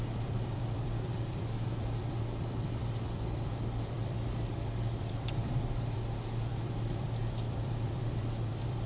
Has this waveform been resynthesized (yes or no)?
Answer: yes